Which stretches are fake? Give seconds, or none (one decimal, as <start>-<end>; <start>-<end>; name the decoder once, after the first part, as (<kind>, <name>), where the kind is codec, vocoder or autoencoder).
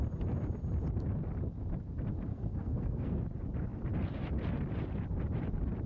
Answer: 2.3-3.2 (codec, SNAC)